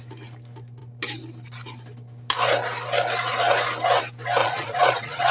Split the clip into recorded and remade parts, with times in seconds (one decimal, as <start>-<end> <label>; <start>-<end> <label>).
0.0-4.4 recorded; 4.4-5.3 remade